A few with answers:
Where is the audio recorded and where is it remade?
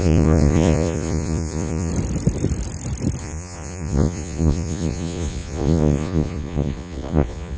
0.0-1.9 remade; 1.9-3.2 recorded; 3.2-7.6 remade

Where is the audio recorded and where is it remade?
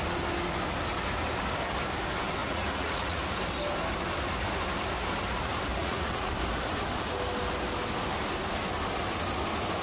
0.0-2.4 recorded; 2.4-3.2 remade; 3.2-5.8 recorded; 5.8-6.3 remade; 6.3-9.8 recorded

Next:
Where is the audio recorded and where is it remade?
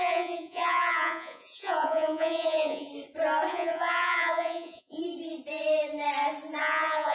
0.0-2.9 remade; 2.9-3.5 recorded; 3.5-5.0 remade; 5.0-6.6 recorded; 6.6-7.1 remade